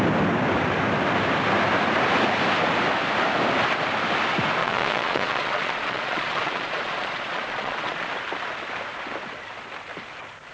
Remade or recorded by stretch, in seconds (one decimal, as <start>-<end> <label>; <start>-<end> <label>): 0.0-4.6 recorded; 4.6-8.1 remade; 8.1-10.5 recorded